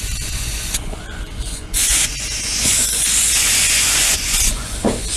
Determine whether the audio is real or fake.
fake